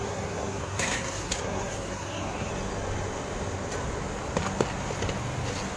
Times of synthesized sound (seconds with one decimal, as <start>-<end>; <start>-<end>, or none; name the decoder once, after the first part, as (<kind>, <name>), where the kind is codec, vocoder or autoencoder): 0.0-2.5 (codec, SNAC)